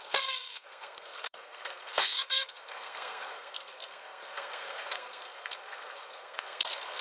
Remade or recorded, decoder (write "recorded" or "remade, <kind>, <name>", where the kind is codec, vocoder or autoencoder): remade, codec, SNAC